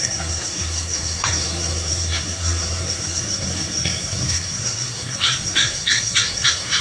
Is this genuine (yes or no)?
no